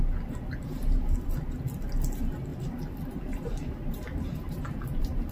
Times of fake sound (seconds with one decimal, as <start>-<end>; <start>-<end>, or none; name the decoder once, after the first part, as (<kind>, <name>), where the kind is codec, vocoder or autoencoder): 2.5-5.3 (vocoder, BigVGAN v2)